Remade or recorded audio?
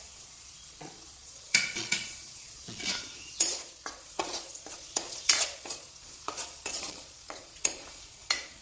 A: remade